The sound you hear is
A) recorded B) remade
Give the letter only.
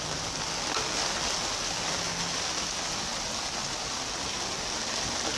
A